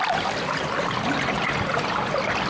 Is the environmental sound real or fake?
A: real